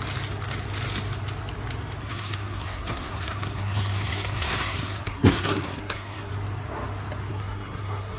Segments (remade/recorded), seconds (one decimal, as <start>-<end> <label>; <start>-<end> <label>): 0.0-2.0 recorded; 2.0-6.3 remade; 6.3-7.3 recorded; 7.3-8.2 remade

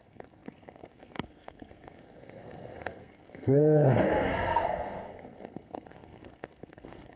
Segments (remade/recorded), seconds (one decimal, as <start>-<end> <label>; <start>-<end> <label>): 0.0-7.2 remade

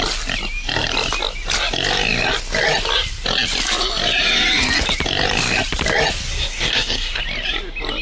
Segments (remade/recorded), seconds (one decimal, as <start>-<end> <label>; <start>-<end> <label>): 0.0-6.3 recorded; 6.3-7.2 remade; 7.2-8.0 recorded

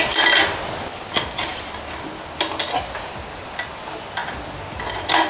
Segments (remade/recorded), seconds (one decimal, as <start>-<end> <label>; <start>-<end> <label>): 0.0-5.3 recorded

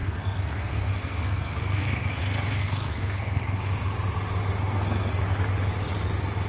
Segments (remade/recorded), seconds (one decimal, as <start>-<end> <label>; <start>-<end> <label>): 0.0-2.1 remade; 2.1-2.5 recorded; 2.5-3.4 remade; 3.4-4.6 recorded; 4.6-5.2 remade; 5.2-6.5 recorded